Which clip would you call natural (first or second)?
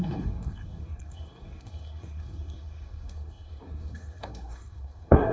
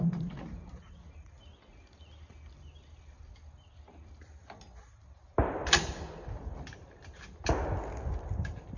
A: second